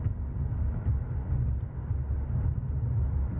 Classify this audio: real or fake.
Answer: real